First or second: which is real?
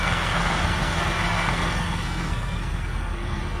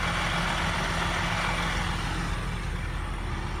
second